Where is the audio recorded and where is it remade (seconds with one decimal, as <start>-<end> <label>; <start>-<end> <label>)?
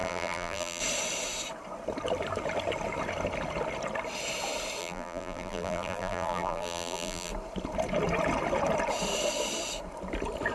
0.0-0.8 remade; 0.8-4.8 recorded; 4.8-7.3 remade; 7.3-10.5 recorded